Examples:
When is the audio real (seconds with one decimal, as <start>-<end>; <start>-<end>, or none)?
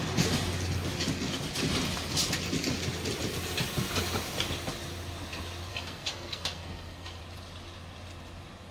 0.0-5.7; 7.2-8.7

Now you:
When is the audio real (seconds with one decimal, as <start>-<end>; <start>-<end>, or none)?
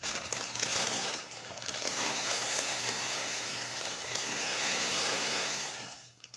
none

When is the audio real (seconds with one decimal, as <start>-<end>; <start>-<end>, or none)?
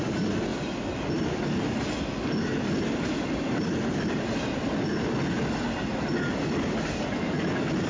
0.0-7.9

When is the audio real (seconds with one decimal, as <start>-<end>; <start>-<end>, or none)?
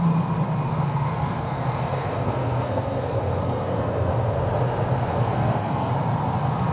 0.0-0.7; 4.1-5.1; 5.9-6.7